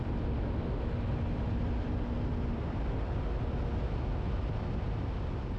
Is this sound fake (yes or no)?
no